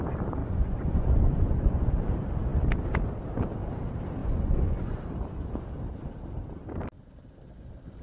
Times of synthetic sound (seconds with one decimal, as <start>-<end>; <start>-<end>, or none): 0.4-1.9; 4.2-5.0